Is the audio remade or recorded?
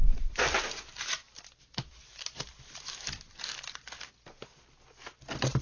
recorded